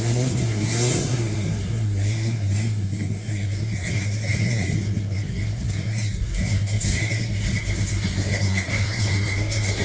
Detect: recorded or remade remade